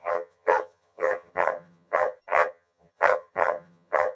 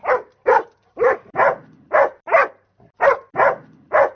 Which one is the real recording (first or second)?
second